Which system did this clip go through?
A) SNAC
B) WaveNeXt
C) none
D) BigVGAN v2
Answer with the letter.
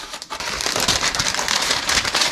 D